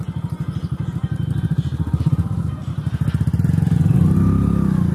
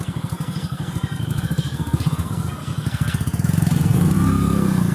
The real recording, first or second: first